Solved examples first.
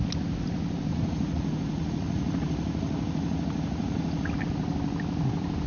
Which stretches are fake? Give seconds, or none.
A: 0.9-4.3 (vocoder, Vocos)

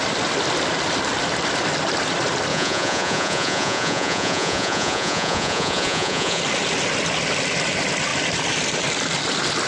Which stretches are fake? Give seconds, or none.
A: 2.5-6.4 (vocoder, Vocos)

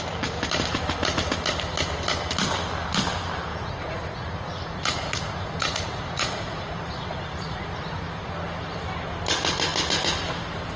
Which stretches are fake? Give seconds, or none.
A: 3.5-8.0 (vocoder, Vocos)